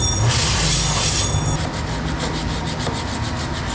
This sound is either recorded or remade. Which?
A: recorded